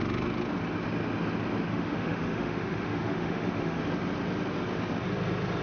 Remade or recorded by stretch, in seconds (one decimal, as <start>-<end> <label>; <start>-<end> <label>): 0.0-1.7 recorded; 1.7-3.8 remade; 3.8-5.6 recorded